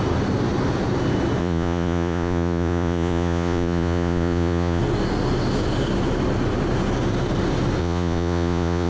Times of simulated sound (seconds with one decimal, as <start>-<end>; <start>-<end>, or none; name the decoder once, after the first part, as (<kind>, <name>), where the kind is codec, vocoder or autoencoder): 1.4-4.8 (vocoder, Vocos); 7.8-8.9